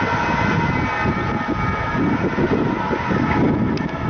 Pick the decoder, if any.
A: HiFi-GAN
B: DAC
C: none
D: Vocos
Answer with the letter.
C